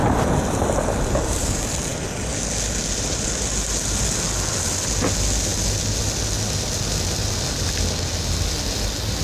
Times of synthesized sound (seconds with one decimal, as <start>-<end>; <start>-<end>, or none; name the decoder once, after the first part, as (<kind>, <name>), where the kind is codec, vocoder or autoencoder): none